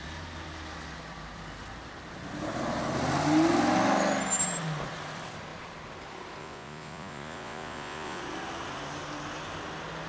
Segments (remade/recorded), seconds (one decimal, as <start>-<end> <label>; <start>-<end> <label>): 0.0-6.4 recorded; 6.4-8.2 remade; 8.2-10.1 recorded